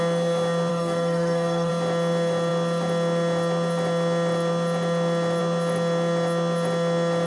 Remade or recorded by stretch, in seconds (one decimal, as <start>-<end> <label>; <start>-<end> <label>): 0.0-0.7 recorded; 0.7-1.7 remade; 1.7-7.3 recorded